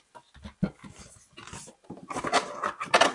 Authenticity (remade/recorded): recorded